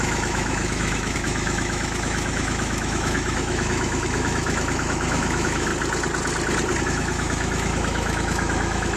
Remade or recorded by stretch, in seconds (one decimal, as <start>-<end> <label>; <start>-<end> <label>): 0.0-5.7 remade; 5.7-6.8 recorded; 6.8-9.0 remade

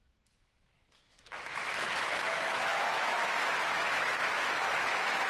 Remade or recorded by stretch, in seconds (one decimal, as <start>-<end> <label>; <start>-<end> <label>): 0.0-5.3 remade

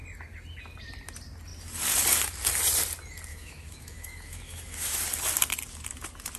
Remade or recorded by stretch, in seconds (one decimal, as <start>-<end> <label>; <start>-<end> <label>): 0.0-3.3 recorded; 3.3-5.0 remade; 5.0-6.4 recorded

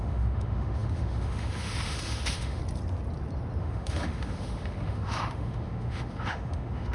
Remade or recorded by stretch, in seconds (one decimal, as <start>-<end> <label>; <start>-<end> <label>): 0.0-2.6 remade; 2.6-3.6 recorded; 3.6-6.9 remade

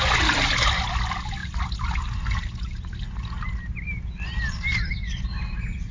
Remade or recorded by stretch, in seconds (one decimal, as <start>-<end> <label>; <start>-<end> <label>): 0.0-5.9 recorded

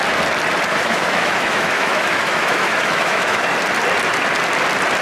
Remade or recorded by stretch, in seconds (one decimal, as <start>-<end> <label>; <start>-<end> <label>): 0.0-0.7 recorded; 0.7-3.4 remade; 3.4-5.0 recorded